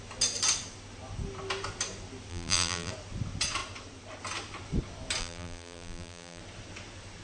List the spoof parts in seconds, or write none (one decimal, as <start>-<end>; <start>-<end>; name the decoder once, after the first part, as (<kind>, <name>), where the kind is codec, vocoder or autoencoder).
2.3-2.9 (vocoder, BigVGAN v2); 5.2-6.4